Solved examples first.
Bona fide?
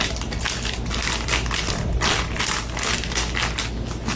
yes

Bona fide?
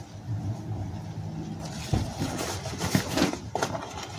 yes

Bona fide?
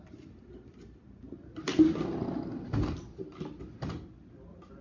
yes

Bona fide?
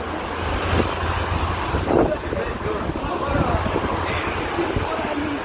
yes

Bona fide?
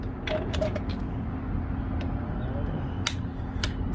yes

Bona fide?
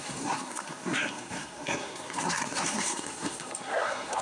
no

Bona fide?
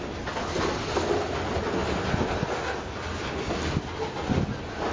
yes